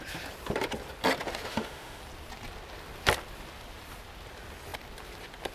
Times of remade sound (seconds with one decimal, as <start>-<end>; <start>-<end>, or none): 1.5-2.0